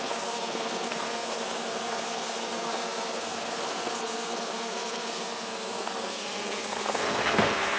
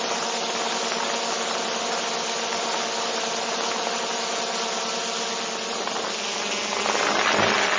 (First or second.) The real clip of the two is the second